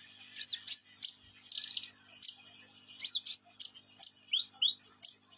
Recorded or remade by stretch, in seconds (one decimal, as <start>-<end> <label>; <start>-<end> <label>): 0.0-5.4 recorded